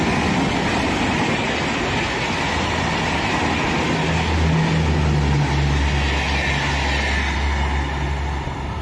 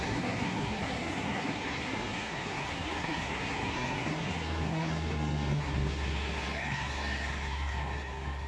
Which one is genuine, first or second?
first